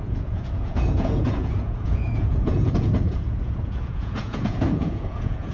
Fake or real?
fake